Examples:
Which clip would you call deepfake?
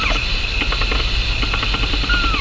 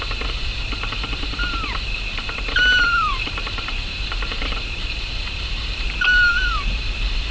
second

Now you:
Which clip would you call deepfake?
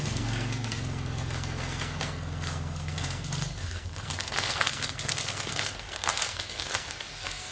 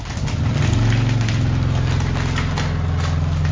first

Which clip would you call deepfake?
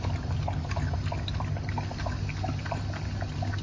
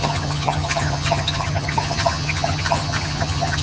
second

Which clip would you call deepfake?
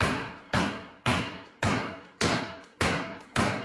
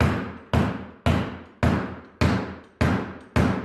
first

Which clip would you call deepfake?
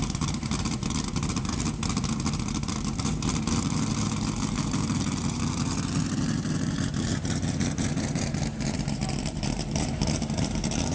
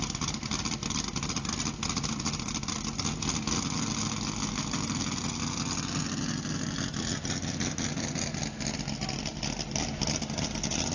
first